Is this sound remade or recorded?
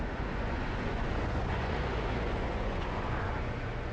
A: remade